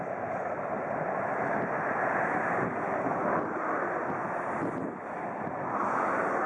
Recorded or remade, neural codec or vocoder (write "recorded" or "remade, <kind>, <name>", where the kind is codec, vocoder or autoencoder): recorded